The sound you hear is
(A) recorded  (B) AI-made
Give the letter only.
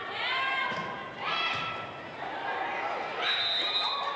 A